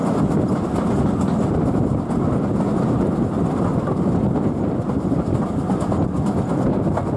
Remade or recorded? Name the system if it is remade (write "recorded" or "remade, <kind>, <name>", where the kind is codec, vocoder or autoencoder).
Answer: recorded